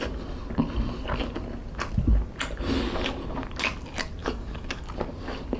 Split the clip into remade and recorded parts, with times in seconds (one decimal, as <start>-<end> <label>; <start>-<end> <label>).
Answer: 0.0-4.2 recorded; 4.2-4.8 remade; 4.8-5.6 recorded